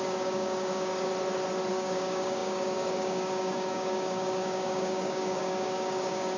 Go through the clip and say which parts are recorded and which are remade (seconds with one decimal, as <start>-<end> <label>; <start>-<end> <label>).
0.0-1.1 remade; 1.1-1.7 recorded; 1.7-6.4 remade